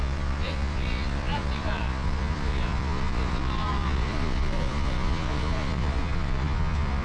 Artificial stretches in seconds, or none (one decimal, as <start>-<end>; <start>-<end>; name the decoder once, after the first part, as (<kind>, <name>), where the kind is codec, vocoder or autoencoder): 0.0-7.0 (vocoder, Vocos)